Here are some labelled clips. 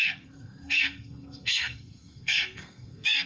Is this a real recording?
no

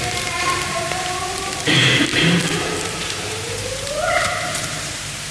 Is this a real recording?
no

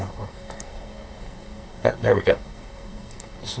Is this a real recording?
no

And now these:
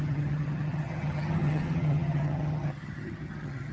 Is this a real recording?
no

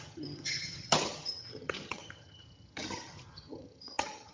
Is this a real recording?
no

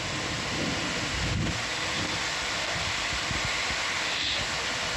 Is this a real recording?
yes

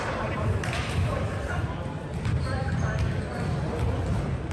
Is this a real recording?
no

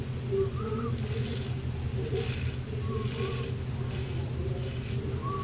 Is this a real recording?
yes